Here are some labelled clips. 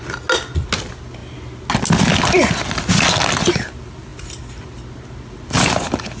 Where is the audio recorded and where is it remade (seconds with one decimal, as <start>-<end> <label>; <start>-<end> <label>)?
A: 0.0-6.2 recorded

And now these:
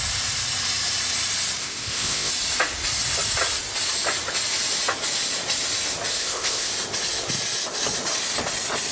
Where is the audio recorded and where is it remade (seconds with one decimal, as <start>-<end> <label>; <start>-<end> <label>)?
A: 0.0-1.6 recorded; 1.6-2.3 remade; 2.3-6.1 recorded; 6.1-6.7 remade; 6.7-8.9 recorded

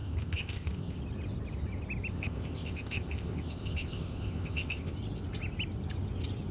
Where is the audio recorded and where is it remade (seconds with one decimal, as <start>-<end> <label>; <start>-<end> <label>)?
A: 0.0-1.0 remade; 1.0-2.1 recorded; 2.1-4.9 remade; 4.9-6.5 recorded